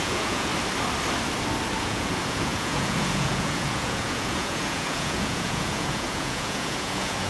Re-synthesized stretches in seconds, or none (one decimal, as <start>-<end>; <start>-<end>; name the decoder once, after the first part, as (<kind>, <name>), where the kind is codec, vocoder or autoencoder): 0.0-0.5 (vocoder, Vocos); 1.8-7.3